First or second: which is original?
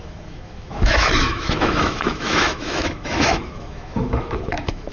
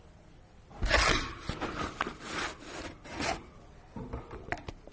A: second